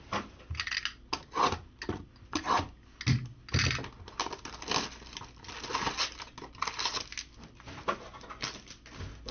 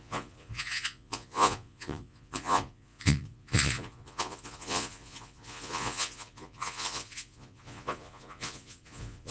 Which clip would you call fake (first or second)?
second